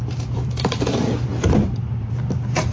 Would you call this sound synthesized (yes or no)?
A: yes